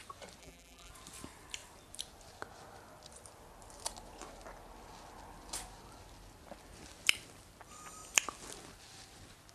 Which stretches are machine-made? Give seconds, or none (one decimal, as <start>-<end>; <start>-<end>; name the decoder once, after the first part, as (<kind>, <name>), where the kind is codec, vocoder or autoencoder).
0.4-0.9 (vocoder, BigVGAN v2)